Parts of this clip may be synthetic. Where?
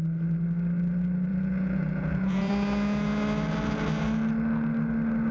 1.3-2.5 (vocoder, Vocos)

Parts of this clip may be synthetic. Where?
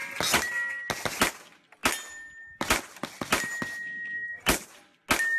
none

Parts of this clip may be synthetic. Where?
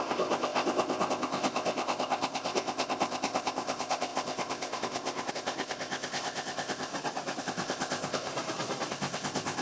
0.0-6.9 (codec, ZipCodec); 7.4-8.3; 8.9-9.6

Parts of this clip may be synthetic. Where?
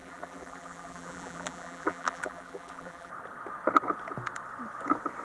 0.0-3.1 (vocoder, BigVGAN v2)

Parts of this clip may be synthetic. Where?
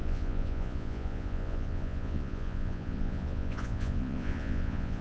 0.0-5.0 (vocoder, Vocos)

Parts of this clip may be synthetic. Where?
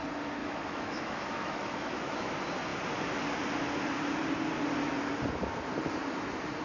0.4-2.3 (autoencoder, DAC-VAE)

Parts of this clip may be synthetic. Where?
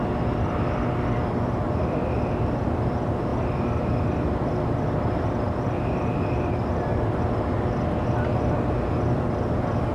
none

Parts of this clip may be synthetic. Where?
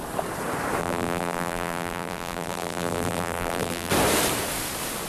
0.8-3.9 (vocoder, BigVGAN v2)